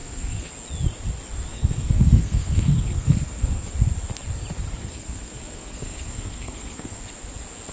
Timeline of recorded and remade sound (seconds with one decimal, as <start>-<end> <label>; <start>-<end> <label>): 0.0-0.5 remade; 0.5-1.5 recorded; 1.5-3.7 remade; 3.7-4.8 recorded; 4.8-7.0 remade; 7.0-7.7 recorded